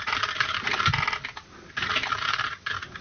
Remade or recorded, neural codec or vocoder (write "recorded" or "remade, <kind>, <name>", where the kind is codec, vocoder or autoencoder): recorded